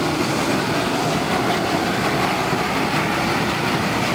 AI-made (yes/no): no